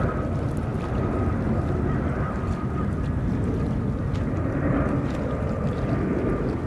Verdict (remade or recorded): recorded